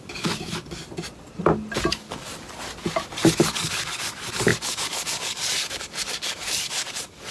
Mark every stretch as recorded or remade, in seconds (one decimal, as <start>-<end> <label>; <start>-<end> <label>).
0.0-0.8 remade; 0.8-1.9 recorded; 1.9-2.3 remade; 2.3-3.4 recorded; 3.4-7.3 remade